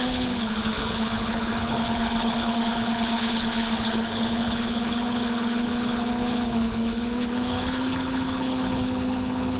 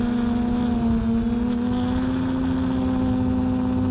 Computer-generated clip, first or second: first